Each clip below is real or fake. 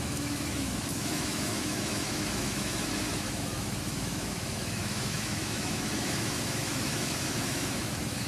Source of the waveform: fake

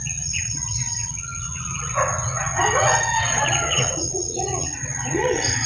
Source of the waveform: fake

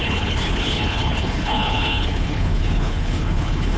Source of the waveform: fake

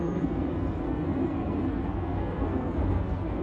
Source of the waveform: fake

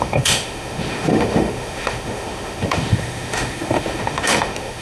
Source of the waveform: fake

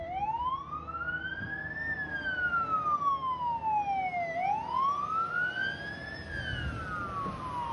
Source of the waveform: real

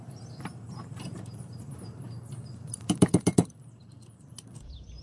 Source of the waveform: fake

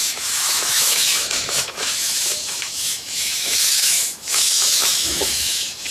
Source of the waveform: fake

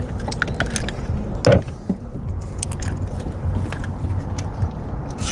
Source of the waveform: real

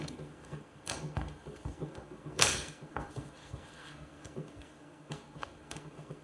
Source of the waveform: fake